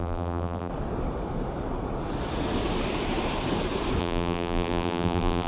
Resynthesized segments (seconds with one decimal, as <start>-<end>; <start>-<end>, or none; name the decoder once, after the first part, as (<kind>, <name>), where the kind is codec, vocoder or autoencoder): 0.0-0.7 (vocoder, BigVGAN v2); 4.0-5.5